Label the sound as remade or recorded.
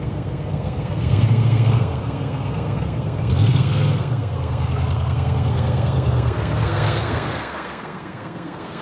remade